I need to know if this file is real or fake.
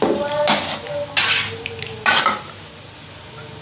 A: real